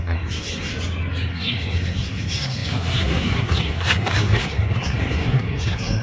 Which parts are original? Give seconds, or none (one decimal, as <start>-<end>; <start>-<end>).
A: 0.7-1.3